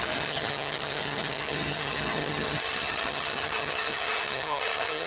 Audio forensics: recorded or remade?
remade